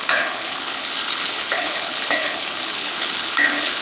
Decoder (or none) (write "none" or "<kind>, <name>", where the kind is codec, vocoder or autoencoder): codec, HILCodec